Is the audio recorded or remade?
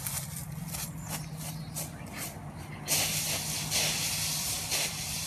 recorded